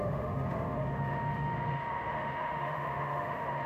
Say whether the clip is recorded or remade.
remade